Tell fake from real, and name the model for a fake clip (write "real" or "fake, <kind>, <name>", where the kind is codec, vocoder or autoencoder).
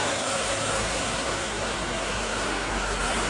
fake, codec, SNAC